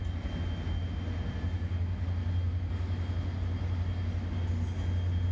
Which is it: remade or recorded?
recorded